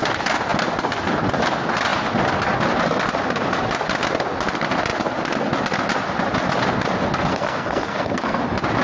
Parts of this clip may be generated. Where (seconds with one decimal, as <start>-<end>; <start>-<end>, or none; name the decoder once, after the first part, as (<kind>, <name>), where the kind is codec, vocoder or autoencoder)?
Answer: 7.3-8.4 (codec, SNAC)

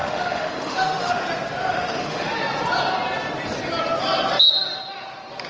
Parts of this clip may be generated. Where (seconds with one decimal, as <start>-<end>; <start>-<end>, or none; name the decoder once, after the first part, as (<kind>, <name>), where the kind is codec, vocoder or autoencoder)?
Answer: 0.0-1.1 (autoencoder, DAC-VAE); 1.7-2.4

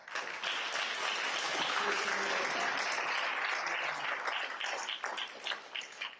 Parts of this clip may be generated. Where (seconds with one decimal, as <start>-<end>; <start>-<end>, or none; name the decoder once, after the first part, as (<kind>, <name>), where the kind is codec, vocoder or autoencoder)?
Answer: 1.4-2.1 (codec, HILCodec); 5.8-6.2

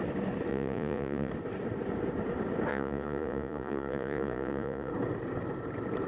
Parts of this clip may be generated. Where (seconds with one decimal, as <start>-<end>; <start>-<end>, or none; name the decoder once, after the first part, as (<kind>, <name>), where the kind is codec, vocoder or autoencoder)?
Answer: 0.5-1.3 (vocoder, Vocos); 2.7-4.9

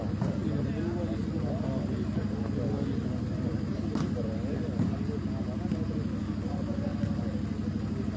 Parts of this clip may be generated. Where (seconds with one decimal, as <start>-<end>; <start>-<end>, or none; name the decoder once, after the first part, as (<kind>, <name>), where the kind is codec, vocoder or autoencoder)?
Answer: none

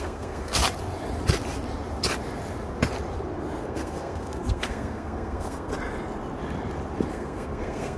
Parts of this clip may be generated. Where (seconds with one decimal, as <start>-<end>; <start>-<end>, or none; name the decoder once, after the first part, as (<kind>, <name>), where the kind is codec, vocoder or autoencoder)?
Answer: 0.0-0.6 (codec, SNAC); 3.6-5.7; 7.1-8.0